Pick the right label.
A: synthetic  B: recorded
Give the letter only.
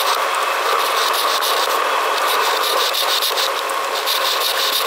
A